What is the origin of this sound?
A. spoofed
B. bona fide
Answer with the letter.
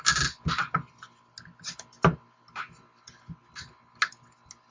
B